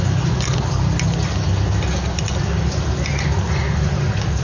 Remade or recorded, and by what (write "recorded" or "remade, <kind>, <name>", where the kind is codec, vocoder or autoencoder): recorded